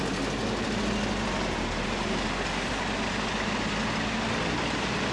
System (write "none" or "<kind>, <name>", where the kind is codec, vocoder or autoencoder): none